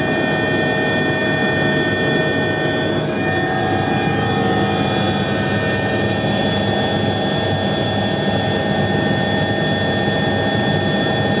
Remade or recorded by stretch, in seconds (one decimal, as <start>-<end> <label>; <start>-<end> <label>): 0.0-11.4 recorded